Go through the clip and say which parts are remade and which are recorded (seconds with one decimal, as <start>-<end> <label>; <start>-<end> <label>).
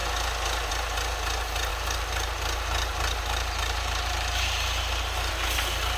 0.0-1.7 recorded; 1.7-5.3 remade; 5.3-6.0 recorded